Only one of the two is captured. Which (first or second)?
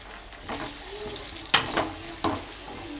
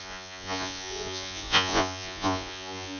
first